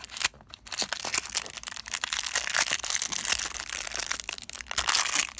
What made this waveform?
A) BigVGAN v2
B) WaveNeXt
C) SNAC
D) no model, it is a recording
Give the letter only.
D